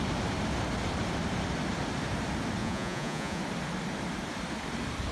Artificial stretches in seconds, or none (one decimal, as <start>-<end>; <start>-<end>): 2.6-3.4